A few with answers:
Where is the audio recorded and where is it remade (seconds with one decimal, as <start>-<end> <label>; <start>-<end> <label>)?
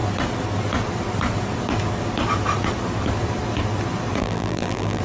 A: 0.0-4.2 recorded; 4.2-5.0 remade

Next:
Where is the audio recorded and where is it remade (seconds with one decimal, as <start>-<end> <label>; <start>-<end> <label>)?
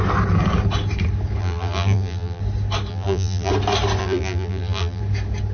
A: 0.0-1.4 recorded; 1.4-2.4 remade; 2.4-2.9 recorded; 2.9-3.5 remade; 3.5-4.0 recorded; 4.0-5.0 remade; 5.0-5.5 recorded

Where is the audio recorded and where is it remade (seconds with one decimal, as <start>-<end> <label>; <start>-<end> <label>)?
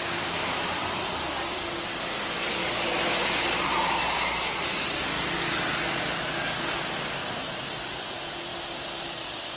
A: 0.0-7.2 recorded; 7.2-8.0 remade; 8.0-8.5 recorded; 8.5-9.6 remade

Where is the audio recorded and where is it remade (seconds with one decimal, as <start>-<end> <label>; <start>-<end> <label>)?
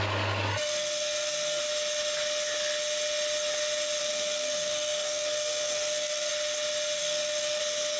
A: 0.0-0.5 recorded; 0.5-1.6 remade; 1.6-4.0 recorded; 4.0-6.3 remade; 6.3-7.0 recorded; 7.0-7.6 remade; 7.6-8.0 recorded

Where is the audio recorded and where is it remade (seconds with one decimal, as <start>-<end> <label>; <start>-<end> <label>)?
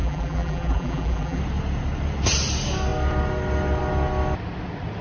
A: 0.0-1.4 remade; 1.4-5.0 recorded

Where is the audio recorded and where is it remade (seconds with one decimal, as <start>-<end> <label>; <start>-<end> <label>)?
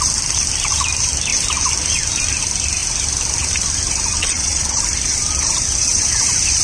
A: 0.0-4.2 recorded; 4.2-4.8 remade; 4.8-6.6 recorded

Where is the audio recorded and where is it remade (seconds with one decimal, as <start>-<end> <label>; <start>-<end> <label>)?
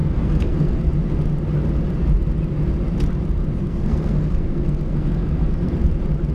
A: 0.0-0.9 remade; 0.9-3.6 recorded; 3.6-5.7 remade; 5.7-6.3 recorded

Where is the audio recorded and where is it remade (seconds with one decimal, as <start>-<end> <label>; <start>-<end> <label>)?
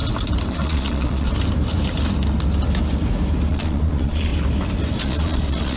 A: 0.0-0.5 recorded; 0.5-1.3 remade; 1.3-3.5 recorded; 3.5-4.3 remade; 4.3-5.0 recorded; 5.0-5.8 remade